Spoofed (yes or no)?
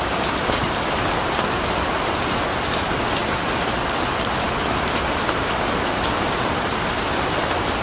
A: no